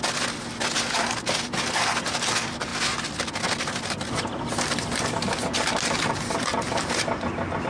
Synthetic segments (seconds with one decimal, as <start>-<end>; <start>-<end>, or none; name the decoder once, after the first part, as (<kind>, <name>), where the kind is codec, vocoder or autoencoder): none

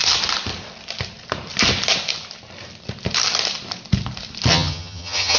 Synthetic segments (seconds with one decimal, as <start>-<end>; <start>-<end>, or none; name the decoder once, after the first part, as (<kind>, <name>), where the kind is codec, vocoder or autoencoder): 4.5-5.4 (vocoder, HiFi-GAN)

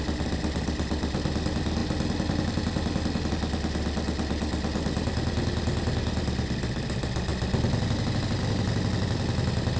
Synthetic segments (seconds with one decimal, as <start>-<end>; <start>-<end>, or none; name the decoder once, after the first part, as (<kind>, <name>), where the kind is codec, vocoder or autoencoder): none

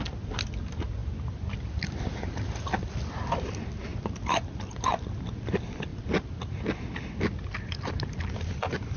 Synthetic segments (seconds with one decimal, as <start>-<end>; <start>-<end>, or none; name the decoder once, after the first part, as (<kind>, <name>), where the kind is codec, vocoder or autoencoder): none

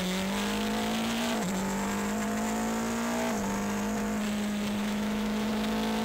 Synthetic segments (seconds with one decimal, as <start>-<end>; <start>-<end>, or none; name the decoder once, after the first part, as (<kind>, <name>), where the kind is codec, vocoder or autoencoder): 4.8-5.5 (autoencoder, DAC-VAE)